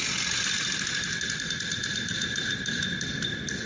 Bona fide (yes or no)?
yes